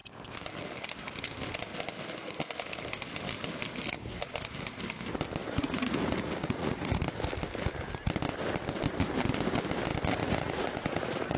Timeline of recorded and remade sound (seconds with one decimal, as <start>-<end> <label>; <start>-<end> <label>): 0.0-5.4 recorded; 5.4-7.0 remade; 7.0-10.2 recorded; 10.2-11.4 remade

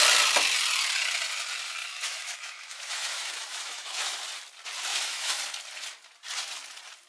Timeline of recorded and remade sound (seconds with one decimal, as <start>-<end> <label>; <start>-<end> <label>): 0.0-1.8 recorded; 1.8-4.2 remade; 4.2-4.9 recorded; 4.9-5.4 remade; 5.4-7.1 recorded

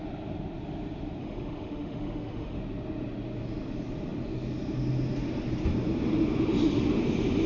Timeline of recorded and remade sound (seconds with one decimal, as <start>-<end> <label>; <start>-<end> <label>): 0.0-1.2 recorded; 1.2-2.6 remade; 2.6-7.5 recorded

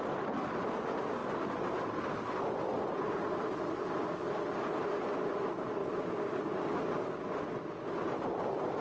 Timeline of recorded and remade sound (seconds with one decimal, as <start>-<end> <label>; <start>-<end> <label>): 0.0-8.8 recorded

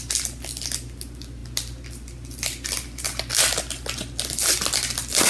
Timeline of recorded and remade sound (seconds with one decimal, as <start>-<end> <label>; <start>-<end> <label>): 0.0-5.3 recorded

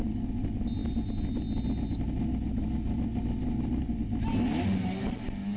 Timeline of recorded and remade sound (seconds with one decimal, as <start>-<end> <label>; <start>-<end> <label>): 0.0-5.6 recorded

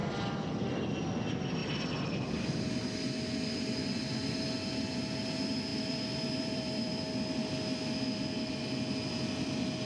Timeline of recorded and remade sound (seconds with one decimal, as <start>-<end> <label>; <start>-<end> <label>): 0.0-5.7 recorded; 5.7-7.0 remade; 7.0-9.9 recorded

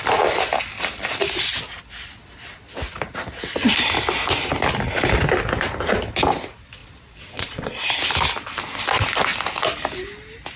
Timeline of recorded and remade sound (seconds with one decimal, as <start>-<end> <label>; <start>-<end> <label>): 0.0-6.8 recorded; 6.8-7.8 remade; 7.8-10.6 recorded